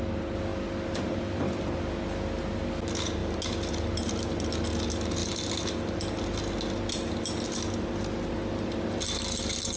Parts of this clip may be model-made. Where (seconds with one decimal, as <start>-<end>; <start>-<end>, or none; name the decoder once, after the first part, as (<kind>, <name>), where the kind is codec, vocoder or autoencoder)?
none